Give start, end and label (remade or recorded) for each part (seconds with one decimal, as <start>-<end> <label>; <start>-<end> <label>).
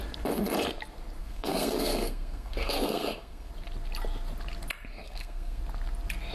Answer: 0.0-1.2 recorded; 1.2-3.5 remade; 3.5-4.9 recorded; 4.9-5.6 remade; 5.6-6.3 recorded